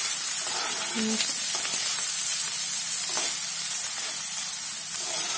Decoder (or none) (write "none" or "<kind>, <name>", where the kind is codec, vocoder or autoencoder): none